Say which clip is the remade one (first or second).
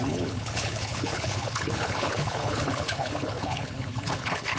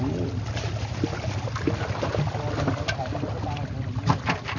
first